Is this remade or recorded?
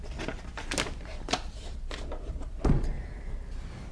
recorded